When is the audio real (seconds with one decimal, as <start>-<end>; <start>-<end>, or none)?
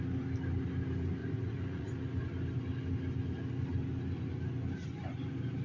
0.0-1.2; 1.9-5.6